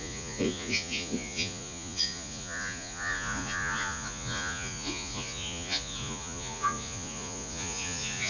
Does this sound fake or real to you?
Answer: fake